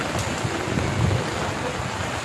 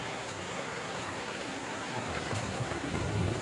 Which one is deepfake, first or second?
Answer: second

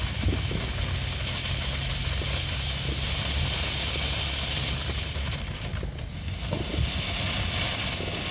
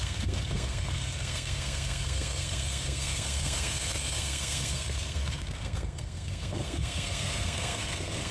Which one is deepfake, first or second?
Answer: second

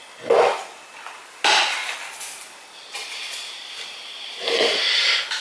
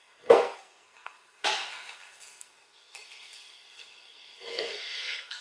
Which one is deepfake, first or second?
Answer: second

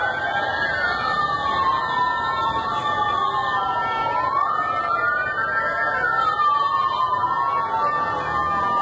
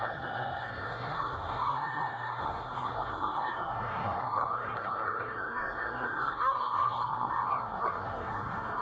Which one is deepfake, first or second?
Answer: second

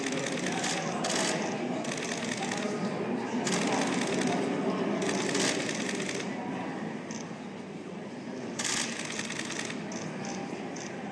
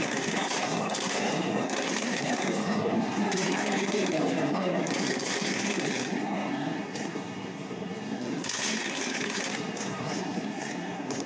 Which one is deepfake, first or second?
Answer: second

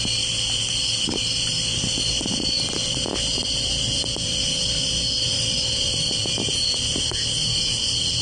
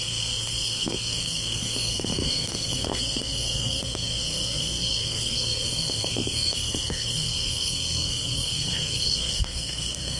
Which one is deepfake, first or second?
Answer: second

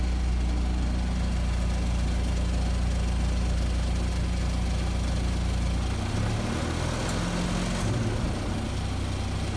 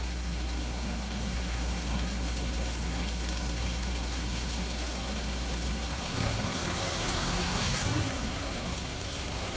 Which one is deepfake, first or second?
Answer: second